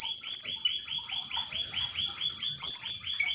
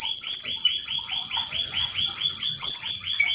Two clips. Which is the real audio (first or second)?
first